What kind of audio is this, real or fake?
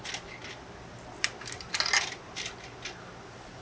real